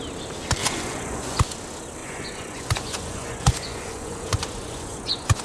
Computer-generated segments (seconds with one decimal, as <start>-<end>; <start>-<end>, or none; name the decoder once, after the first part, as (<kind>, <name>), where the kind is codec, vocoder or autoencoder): 0.6-1.4 (vocoder, Vocos); 2.0-5.4